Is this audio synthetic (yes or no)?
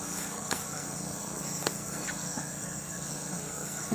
yes